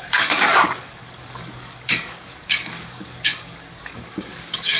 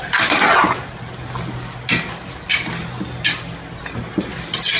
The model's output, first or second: first